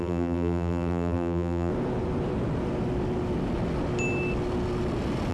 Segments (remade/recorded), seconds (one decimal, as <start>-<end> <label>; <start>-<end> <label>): 0.0-1.7 remade; 1.7-5.3 recorded